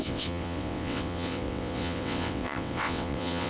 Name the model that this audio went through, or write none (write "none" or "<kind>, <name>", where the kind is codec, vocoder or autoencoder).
vocoder, WaveNeXt